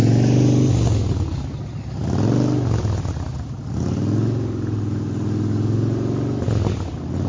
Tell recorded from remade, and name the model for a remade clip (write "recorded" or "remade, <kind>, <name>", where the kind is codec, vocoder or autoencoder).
recorded